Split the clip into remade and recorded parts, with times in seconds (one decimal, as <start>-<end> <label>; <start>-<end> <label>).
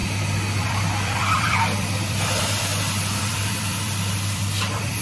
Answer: 0.0-0.6 recorded; 0.6-2.7 remade; 2.7-3.2 recorded; 3.2-5.0 remade